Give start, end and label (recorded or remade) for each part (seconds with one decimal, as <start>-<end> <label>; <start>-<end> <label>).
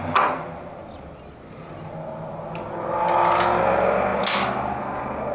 0.0-5.3 recorded